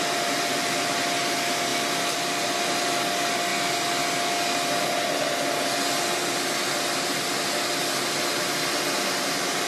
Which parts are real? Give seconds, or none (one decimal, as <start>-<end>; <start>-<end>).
0.0-9.7